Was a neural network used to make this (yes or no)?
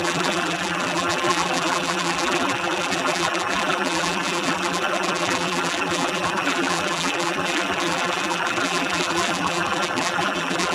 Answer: yes